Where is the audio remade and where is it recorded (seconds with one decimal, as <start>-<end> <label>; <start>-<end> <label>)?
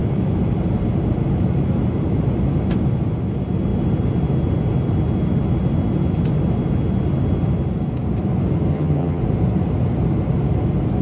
0.0-8.7 recorded; 8.7-9.2 remade; 9.2-11.0 recorded